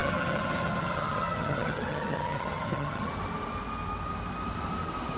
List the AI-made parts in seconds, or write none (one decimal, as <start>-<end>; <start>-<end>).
0.0-3.1